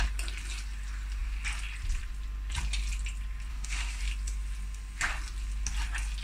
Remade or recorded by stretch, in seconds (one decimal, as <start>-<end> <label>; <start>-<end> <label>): 0.0-3.5 recorded; 3.5-4.0 remade; 4.0-6.2 recorded